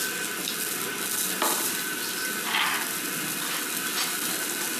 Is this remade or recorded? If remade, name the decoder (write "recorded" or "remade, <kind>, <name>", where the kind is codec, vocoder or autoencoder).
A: recorded